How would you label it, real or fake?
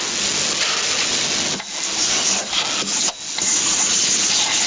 real